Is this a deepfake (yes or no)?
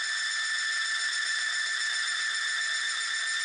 no